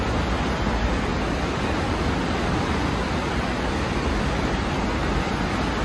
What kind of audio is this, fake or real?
real